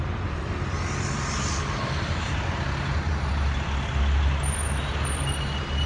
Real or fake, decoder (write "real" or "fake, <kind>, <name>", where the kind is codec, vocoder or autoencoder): real